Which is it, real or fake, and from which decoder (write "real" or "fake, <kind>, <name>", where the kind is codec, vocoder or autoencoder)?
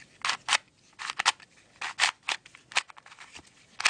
real